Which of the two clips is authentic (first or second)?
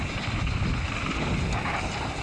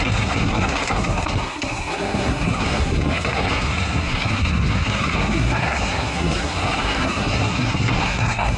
first